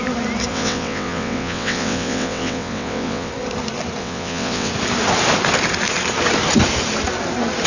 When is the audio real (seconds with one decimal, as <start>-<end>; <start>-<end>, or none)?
0.0-0.5; 3.3-4.0; 4.7-7.7